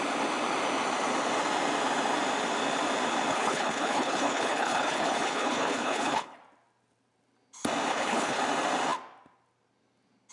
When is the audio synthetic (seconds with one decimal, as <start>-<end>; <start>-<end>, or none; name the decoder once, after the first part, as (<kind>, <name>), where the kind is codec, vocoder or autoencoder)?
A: 3.3-6.4 (codec, HILCodec); 7.9-8.4